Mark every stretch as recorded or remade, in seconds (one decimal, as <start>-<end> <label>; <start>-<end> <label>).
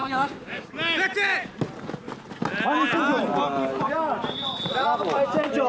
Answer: 0.0-0.7 remade; 0.7-5.7 recorded